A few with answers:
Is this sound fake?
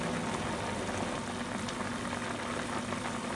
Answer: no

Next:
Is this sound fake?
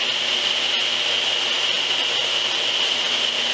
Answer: no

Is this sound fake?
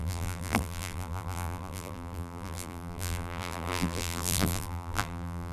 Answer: yes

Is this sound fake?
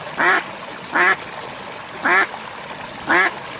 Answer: no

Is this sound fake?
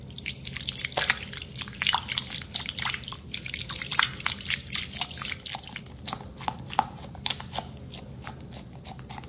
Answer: no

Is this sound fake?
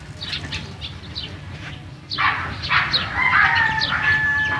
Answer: no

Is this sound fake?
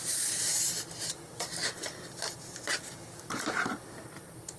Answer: yes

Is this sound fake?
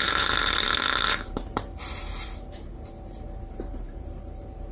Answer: yes